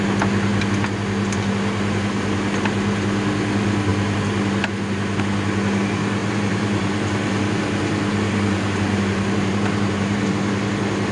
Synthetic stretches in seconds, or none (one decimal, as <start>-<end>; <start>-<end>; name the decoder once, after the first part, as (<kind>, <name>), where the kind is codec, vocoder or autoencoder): 6.2-10.3 (vocoder, BigVGAN v2)